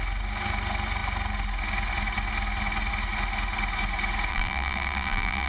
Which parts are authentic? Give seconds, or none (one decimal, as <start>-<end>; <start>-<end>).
0.0-4.3